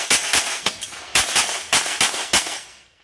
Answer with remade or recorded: remade